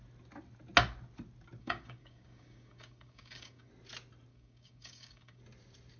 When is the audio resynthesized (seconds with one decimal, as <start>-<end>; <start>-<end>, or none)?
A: 1.6-3.7; 4.3-5.4